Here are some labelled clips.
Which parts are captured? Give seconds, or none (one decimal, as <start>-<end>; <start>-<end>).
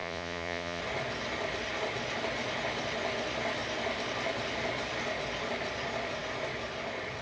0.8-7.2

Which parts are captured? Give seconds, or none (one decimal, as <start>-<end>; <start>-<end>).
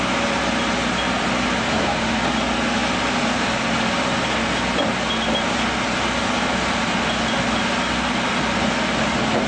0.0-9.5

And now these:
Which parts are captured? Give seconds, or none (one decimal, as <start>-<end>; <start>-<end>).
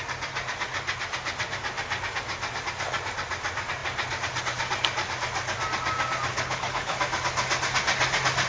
0.0-6.3; 7.0-8.5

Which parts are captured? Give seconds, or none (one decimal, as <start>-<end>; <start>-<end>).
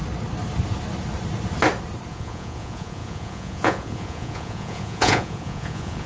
0.0-2.1